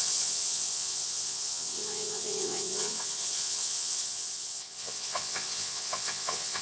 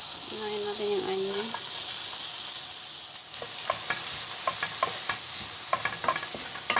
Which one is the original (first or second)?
second